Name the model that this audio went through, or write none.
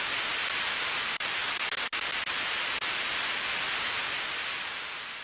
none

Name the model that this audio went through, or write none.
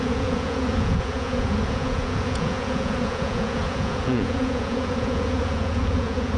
vocoder, Vocos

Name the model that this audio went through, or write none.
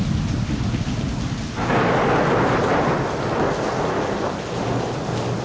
none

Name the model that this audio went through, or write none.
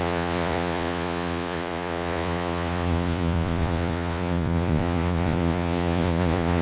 vocoder, Vocos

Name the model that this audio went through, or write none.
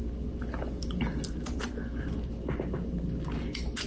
none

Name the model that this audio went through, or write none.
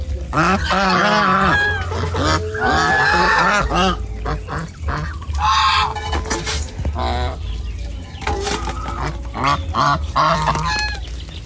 none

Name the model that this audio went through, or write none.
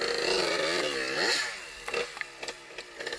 none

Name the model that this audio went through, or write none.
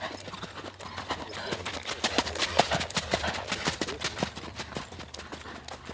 none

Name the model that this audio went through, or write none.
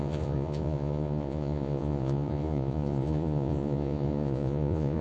vocoder, Vocos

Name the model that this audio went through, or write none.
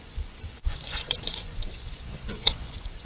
vocoder, Vocos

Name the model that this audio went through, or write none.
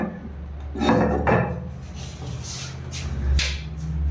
none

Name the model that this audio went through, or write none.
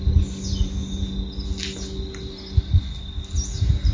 none